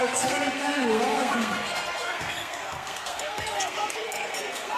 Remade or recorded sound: remade